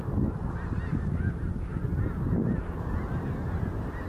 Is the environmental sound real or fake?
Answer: real